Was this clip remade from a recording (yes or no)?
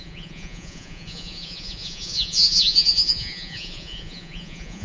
yes